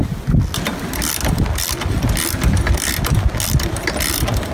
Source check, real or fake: real